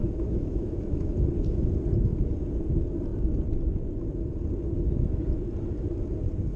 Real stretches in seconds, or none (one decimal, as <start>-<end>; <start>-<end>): 1.1-6.6